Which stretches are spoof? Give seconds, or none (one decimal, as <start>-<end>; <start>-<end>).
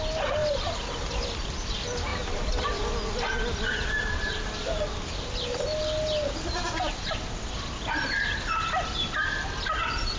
2.1-4.1